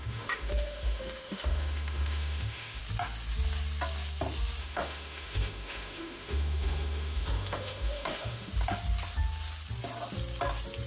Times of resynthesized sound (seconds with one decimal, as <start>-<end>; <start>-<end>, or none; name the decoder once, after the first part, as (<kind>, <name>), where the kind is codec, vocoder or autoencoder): 0.0-2.8 (autoencoder, DAC-VAE); 4.6-8.5